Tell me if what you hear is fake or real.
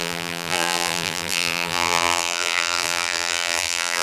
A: fake